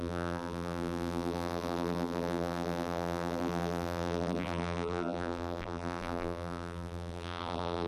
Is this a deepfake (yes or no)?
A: yes